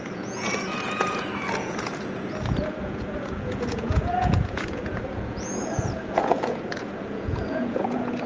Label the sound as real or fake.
fake